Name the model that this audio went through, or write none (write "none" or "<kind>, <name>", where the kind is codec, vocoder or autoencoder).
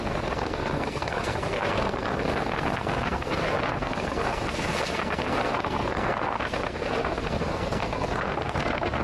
codec, SNAC